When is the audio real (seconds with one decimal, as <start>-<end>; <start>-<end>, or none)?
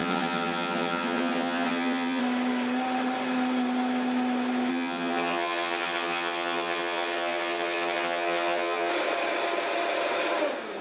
2.2-4.7; 8.9-10.8